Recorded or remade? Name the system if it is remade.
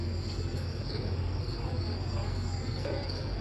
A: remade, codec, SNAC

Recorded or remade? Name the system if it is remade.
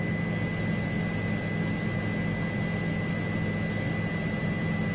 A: recorded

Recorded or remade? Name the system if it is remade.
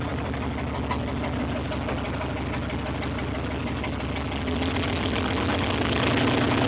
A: recorded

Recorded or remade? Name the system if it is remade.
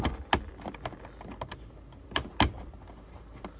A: recorded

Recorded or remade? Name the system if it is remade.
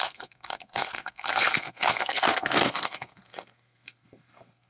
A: remade, codec, SNAC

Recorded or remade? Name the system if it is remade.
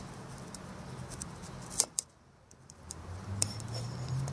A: remade, vocoder, BigVGAN v2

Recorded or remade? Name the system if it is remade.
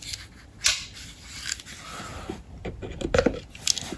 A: recorded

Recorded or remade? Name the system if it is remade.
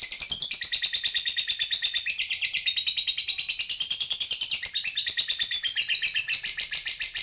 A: recorded